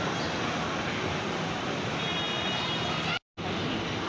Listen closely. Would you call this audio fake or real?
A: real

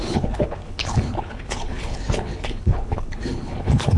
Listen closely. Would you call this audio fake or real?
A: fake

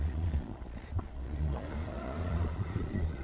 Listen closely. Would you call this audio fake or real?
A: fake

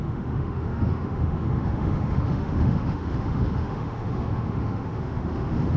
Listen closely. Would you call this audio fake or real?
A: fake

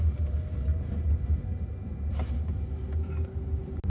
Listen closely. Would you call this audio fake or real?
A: real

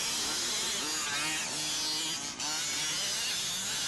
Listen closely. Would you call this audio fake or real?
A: real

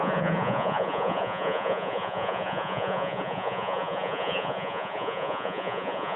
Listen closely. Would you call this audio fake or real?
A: fake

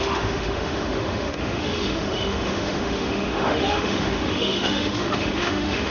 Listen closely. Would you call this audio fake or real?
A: fake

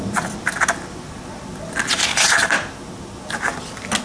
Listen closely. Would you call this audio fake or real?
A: real